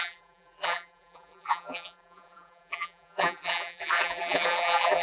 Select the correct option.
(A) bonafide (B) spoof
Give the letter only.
B